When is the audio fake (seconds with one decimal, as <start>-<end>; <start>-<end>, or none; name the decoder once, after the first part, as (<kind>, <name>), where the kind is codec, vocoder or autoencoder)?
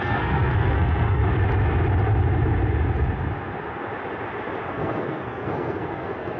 0.0-1.2 (codec, SNAC); 4.7-6.4